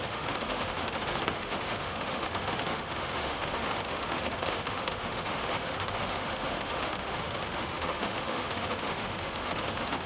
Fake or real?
fake